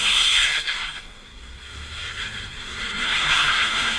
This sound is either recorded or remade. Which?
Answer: remade